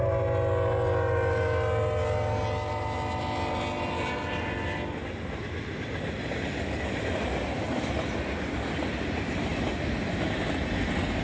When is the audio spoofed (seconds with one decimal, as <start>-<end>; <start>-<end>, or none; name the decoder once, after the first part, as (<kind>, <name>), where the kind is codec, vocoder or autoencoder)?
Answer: none